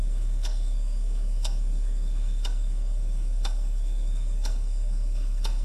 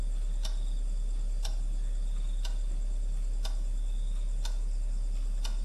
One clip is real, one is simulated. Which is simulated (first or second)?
first